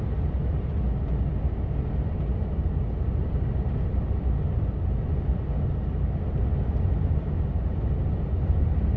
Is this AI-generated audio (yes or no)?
no